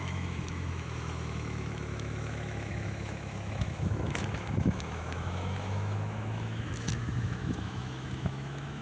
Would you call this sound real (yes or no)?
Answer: no